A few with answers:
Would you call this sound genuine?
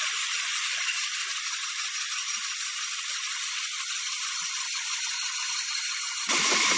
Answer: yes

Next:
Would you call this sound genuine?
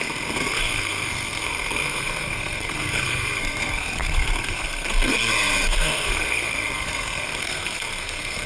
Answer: no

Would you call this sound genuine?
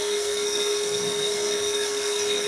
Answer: no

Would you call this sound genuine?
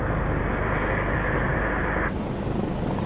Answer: yes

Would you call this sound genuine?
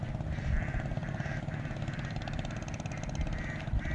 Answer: yes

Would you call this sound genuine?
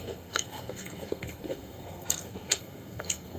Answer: no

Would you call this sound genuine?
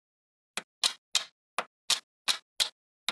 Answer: yes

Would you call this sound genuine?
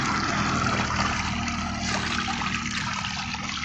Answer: yes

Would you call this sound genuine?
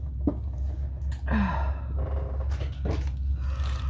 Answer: yes